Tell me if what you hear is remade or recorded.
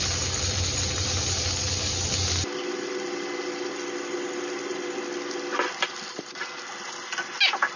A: recorded